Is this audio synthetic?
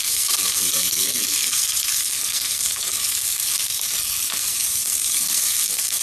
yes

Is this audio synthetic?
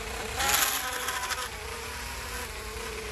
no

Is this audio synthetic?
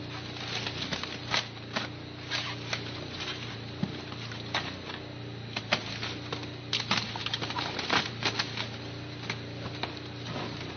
no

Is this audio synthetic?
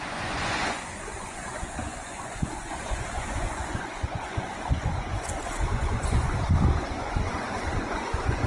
yes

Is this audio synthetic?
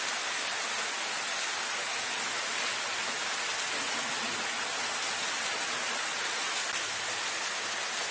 no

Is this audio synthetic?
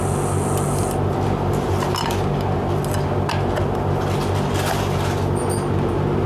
no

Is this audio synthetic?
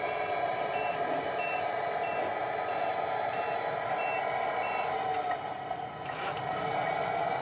no